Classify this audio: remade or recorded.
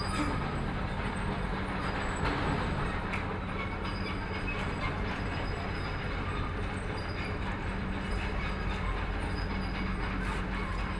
recorded